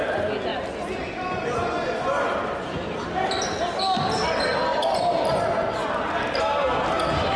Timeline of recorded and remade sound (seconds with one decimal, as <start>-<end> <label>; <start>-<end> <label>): 0.0-7.4 recorded